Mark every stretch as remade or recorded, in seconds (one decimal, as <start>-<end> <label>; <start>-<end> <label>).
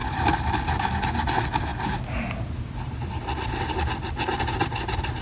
0.0-0.9 remade; 0.9-5.2 recorded